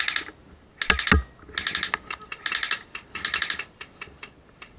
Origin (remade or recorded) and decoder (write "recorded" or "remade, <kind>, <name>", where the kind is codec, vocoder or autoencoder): recorded